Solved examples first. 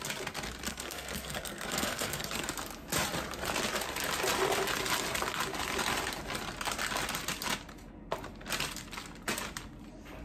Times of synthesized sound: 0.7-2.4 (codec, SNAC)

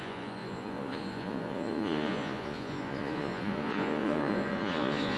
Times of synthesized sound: 0.0-5.2 (vocoder, Vocos)

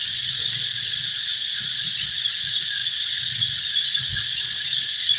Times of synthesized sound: 0.0-5.2 (vocoder, Vocos)

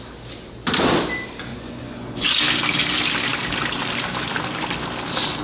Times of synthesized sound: 1.5-2.4 (vocoder, Vocos)

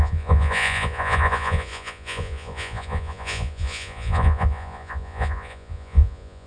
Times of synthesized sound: 0.0-6.5 (vocoder, Vocos)

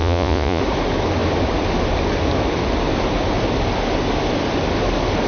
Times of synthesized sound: 0.0-0.6 (vocoder, Vocos)